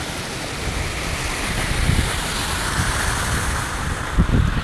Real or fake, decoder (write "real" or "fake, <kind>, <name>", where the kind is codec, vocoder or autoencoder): fake, vocoder, BigVGAN v2